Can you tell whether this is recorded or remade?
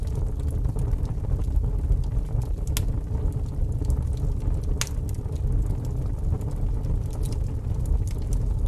recorded